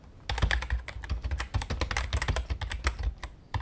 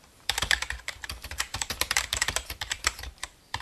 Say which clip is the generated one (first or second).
second